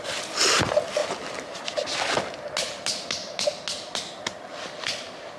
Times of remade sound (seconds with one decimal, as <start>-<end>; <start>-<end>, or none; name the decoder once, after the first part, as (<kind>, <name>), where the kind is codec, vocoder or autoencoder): none

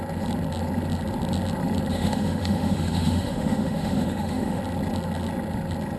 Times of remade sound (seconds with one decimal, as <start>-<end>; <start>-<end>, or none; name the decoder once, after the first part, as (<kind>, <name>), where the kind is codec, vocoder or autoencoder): 1.9-4.6 (autoencoder, DAC-VAE)

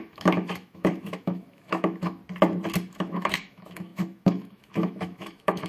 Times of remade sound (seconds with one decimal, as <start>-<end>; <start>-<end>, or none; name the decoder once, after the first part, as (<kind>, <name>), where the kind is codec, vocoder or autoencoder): 0.0-2.2 (autoencoder, DAC-VAE); 2.9-5.7

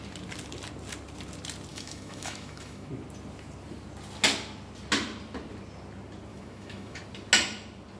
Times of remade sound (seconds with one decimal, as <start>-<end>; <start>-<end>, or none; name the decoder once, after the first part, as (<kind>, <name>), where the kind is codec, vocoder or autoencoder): 1.7-2.9 (autoencoder, DAC-VAE); 6.3-7.0

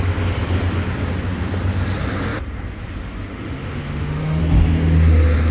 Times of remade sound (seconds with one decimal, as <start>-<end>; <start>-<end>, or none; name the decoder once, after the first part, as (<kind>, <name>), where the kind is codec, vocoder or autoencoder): 3.3-4.4 (autoencoder, DAC-VAE)

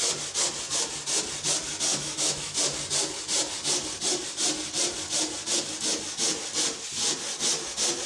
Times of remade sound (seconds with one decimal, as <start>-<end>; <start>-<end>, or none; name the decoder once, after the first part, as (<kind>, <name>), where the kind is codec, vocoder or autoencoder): 1.9-2.6 (autoencoder, DAC-VAE)